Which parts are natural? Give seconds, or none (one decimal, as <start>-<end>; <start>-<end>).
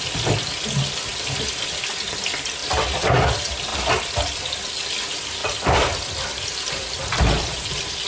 0.0-2.6; 3.2-3.7; 4.7-5.4